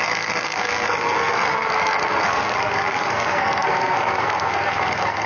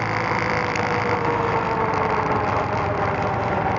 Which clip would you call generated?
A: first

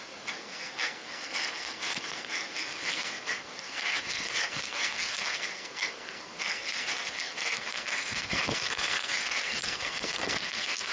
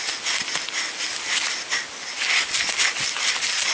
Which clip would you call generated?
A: first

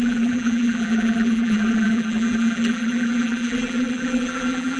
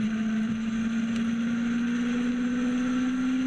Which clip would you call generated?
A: first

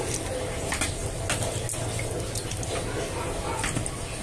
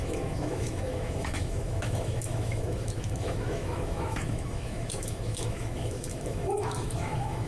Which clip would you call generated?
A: second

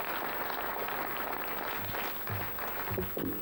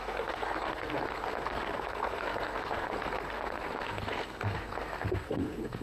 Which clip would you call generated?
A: second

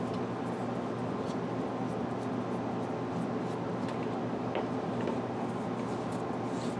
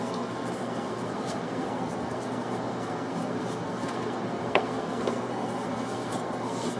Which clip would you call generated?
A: second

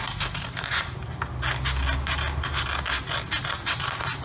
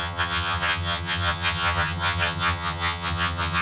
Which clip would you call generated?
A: second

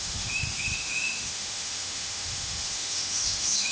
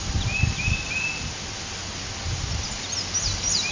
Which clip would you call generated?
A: first